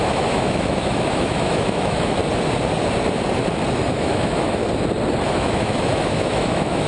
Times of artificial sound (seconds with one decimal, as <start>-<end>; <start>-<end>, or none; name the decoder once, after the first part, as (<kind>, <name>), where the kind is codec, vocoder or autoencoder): 0.0-2.2 (autoencoder, DAC-VAE); 3.9-4.6; 5.3-6.9